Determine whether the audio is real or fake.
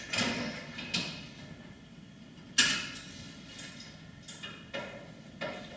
real